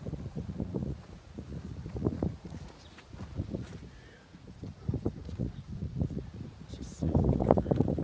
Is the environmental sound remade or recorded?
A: remade